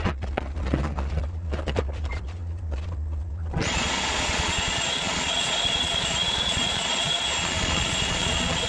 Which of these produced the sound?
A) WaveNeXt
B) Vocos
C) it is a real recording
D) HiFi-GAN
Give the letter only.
B